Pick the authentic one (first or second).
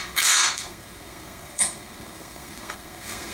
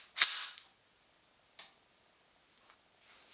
second